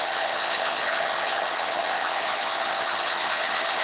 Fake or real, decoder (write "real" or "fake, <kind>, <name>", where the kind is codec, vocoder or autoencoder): fake, vocoder, HiFi-GAN